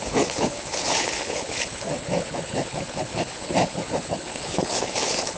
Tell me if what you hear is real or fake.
fake